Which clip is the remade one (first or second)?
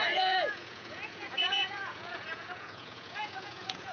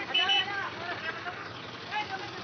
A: first